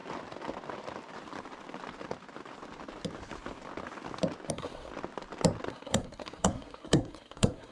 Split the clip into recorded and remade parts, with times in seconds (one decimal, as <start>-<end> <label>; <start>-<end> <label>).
0.0-4.5 recorded; 4.5-4.9 remade; 4.9-5.7 recorded; 5.7-7.7 remade